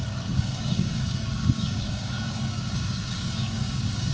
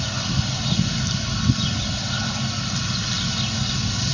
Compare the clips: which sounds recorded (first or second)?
second